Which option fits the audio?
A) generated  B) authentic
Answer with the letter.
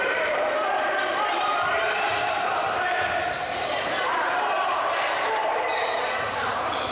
A